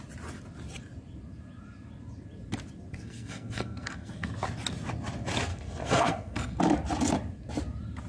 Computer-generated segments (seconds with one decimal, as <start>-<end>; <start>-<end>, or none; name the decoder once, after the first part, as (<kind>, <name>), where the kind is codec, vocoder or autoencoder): 2.9-4.3 (codec, SNAC); 5.5-6.6